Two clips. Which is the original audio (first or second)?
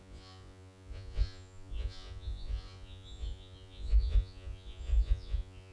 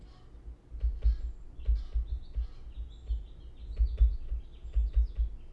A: second